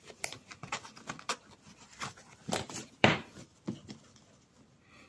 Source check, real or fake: fake